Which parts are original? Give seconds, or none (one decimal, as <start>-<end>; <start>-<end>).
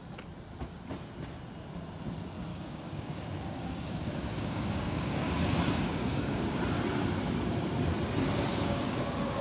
0.0-2.5; 6.6-8.5